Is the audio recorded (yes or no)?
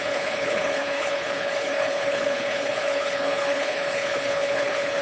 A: no